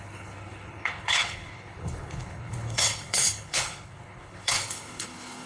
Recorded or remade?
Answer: remade